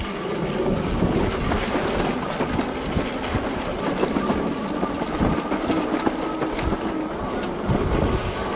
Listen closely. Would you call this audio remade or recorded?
recorded